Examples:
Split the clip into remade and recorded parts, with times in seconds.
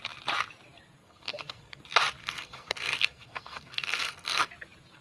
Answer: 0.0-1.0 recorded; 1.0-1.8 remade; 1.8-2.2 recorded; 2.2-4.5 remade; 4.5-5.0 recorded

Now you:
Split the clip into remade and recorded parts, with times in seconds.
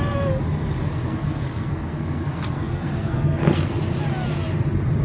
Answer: 0.0-0.8 recorded; 0.8-3.8 remade; 3.8-5.0 recorded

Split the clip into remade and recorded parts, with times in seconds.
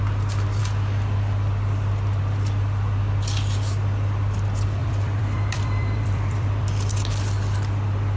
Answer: 0.0-4.8 recorded; 4.8-6.7 remade; 6.7-8.2 recorded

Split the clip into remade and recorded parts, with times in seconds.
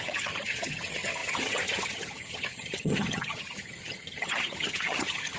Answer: 0.0-5.4 remade